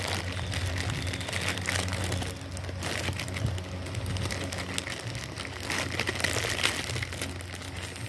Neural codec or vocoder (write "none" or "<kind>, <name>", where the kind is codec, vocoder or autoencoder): none